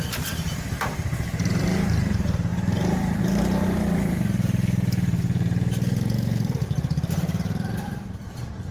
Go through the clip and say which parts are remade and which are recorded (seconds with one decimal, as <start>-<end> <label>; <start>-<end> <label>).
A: 0.0-3.6 remade; 3.6-7.1 recorded; 7.1-8.7 remade